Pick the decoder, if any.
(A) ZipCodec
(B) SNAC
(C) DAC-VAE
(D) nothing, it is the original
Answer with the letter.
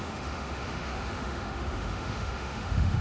C